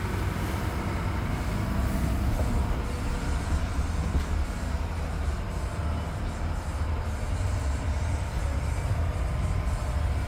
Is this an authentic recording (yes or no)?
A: yes